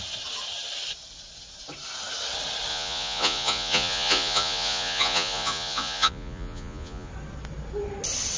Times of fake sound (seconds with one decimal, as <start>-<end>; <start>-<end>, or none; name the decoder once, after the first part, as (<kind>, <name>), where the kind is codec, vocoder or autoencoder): 2.7-7.1 (vocoder, Vocos)